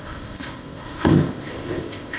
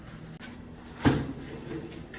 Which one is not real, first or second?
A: first